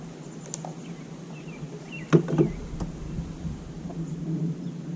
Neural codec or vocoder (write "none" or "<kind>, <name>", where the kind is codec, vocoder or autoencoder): none